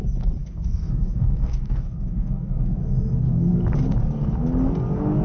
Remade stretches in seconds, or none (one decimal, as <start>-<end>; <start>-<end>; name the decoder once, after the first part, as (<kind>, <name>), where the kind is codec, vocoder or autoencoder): 0.4-3.5 (codec, SNAC)